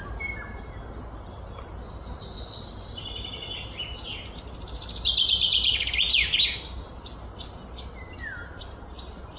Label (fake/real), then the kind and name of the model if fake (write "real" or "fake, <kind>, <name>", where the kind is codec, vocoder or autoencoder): real